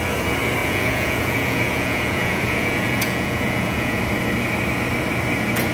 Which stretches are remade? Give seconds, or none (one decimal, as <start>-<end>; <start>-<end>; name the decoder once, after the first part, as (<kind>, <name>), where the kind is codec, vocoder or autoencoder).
0.6-4.0 (vocoder, Vocos)